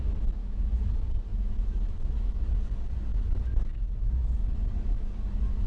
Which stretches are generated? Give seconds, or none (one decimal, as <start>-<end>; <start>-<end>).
0.4-0.9; 1.3-2.5; 3.1-4.1